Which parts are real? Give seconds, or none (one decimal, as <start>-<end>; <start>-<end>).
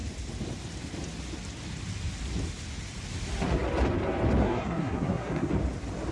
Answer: 0.0-4.4; 5.5-6.1